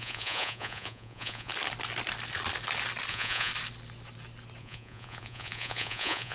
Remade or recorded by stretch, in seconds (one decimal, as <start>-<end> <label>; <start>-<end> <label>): 0.0-1.5 remade; 1.5-3.1 recorded; 3.1-3.5 remade; 3.5-4.6 recorded; 4.6-6.3 remade